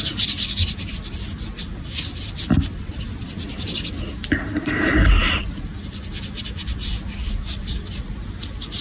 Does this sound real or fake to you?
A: real